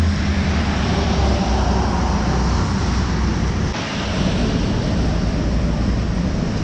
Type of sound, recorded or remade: recorded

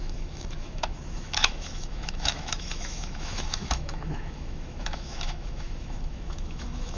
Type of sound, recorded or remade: remade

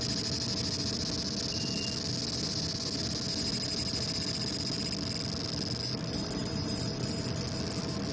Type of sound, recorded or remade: recorded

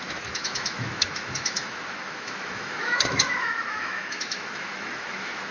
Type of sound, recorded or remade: remade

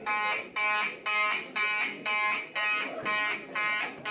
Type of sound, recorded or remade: recorded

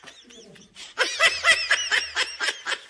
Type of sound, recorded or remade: recorded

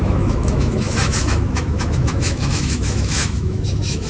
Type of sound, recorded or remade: remade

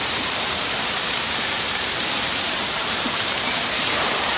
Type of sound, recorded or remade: remade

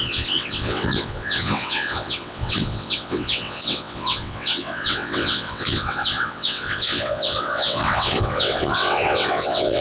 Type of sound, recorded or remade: remade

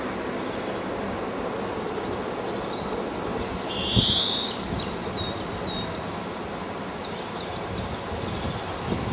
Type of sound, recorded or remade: recorded